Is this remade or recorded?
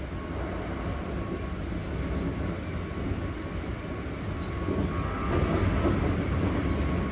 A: recorded